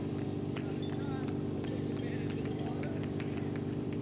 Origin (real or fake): fake